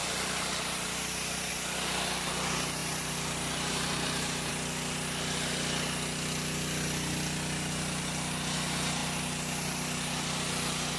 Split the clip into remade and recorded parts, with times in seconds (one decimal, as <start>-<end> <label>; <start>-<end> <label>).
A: 0.0-1.5 remade; 1.5-2.8 recorded; 2.8-4.5 remade; 4.5-11.0 recorded